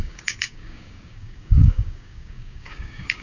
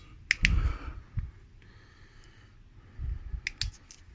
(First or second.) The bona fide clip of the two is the second